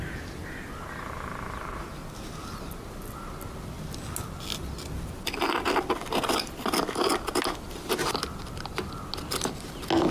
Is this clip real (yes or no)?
yes